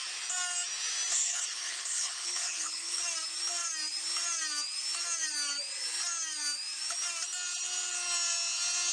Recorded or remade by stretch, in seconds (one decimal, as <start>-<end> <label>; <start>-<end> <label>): 0.0-1.1 recorded; 1.1-3.0 remade; 3.0-8.9 recorded

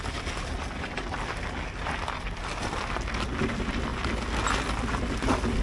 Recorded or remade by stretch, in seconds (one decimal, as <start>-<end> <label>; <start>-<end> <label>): 0.0-5.6 recorded